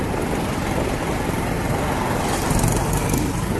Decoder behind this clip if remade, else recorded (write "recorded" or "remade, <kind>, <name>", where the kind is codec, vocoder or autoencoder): recorded